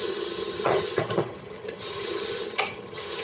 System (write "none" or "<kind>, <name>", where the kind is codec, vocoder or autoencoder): vocoder, HiFi-GAN